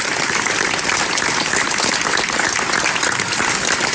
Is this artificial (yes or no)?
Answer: yes